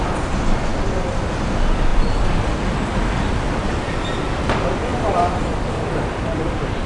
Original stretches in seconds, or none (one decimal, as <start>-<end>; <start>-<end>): 0.0-0.7; 1.3-1.9; 3.3-4.9